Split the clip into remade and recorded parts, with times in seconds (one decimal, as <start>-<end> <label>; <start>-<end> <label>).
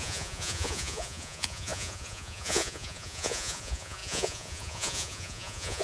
0.0-5.8 remade